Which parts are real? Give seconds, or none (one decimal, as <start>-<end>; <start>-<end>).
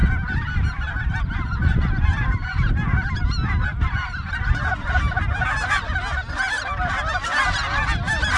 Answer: 2.7-8.4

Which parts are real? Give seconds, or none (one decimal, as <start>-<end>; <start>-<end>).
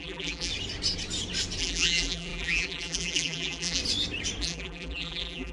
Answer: 0.5-1.6; 3.8-4.4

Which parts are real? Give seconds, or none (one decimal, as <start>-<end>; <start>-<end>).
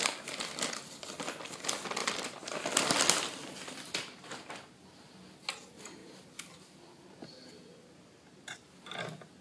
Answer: 0.0-9.4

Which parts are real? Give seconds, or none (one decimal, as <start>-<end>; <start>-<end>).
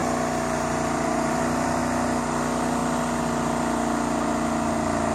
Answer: 1.8-5.1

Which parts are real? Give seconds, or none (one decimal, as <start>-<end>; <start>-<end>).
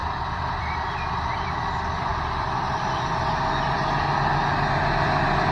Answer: 1.5-2.1; 2.9-5.5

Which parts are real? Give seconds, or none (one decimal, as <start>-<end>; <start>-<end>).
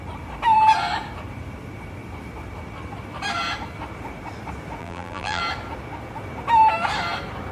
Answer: 0.0-4.8; 5.4-7.5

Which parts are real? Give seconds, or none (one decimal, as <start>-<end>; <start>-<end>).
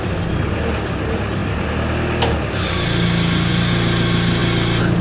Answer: 0.0-5.0